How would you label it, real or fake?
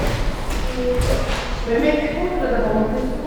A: real